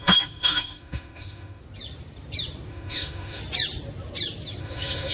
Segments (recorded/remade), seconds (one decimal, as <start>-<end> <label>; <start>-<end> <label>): 0.0-1.6 remade; 1.6-2.7 recorded; 2.7-3.4 remade; 3.4-4.6 recorded; 4.6-5.1 remade